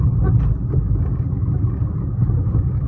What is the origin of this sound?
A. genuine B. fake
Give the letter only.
A